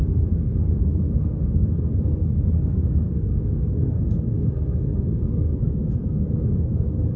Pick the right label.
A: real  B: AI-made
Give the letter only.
B